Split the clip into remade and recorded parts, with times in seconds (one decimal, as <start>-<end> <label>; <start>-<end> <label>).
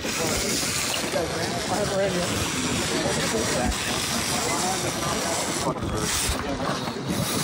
0.0-2.7 recorded; 2.7-3.7 remade; 3.7-7.4 recorded